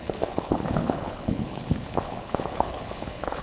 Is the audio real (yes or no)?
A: no